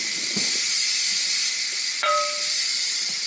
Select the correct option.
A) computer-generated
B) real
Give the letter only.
A